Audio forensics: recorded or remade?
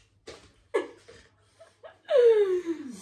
recorded